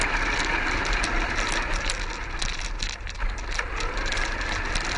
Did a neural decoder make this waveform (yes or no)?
no